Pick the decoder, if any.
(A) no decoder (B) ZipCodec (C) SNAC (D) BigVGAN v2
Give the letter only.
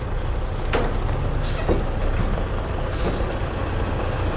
A